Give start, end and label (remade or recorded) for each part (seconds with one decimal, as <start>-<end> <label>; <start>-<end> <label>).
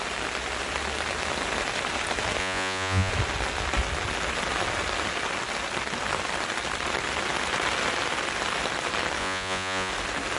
0.0-2.4 recorded; 2.4-3.1 remade; 3.1-9.2 recorded; 9.2-9.9 remade; 9.9-10.4 recorded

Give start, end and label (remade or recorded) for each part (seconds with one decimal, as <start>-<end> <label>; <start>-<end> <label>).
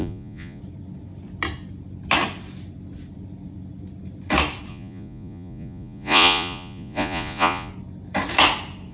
0.0-0.6 remade; 0.6-4.7 recorded; 4.7-7.7 remade; 7.7-8.9 recorded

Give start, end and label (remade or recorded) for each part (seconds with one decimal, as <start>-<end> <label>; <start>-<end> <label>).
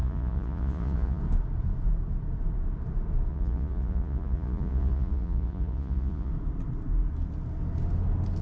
0.0-1.2 remade; 1.2-3.3 recorded; 3.3-6.3 remade; 6.3-8.4 recorded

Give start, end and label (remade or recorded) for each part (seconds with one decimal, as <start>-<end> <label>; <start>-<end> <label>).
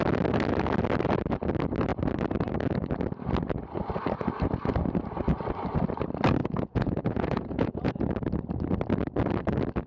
0.0-6.4 recorded; 6.4-7.9 remade; 7.9-9.9 recorded